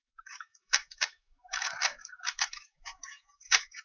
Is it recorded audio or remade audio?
remade